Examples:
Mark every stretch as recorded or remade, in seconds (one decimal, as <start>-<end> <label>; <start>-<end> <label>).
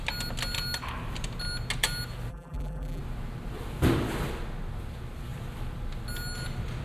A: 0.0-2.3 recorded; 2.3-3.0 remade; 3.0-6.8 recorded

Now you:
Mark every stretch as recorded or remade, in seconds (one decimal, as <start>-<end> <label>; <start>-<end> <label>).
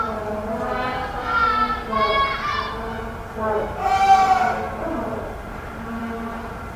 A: 0.0-1.4 remade; 1.4-5.5 recorded; 5.5-6.8 remade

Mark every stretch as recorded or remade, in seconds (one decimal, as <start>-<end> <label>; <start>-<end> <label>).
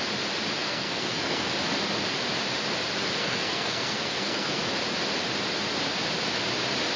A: 0.0-0.6 recorded; 0.6-1.5 remade; 1.5-3.2 recorded; 3.2-4.6 remade; 4.6-7.0 recorded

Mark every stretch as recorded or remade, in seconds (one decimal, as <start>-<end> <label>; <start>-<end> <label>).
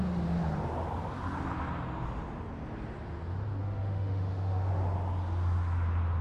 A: 0.0-3.6 recorded; 3.6-4.7 remade; 4.7-6.2 recorded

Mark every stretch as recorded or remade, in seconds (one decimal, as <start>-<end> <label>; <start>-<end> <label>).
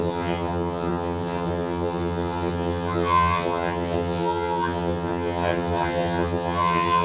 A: 0.0-7.0 remade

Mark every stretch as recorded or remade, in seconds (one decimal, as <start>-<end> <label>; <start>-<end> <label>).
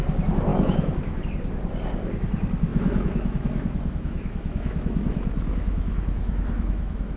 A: 0.0-0.5 recorded; 0.5-1.2 remade; 1.2-2.7 recorded; 2.7-7.2 remade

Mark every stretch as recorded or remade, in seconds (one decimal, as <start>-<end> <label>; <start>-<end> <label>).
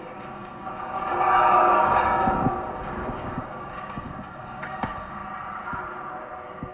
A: 0.0-5.2 remade; 5.2-6.7 recorded